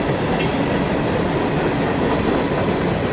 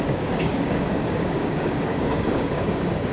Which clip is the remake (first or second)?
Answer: second